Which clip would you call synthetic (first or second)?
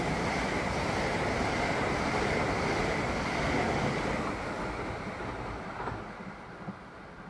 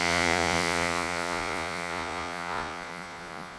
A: second